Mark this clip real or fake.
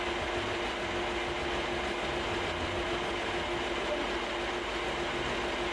real